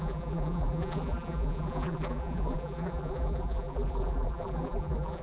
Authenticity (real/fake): fake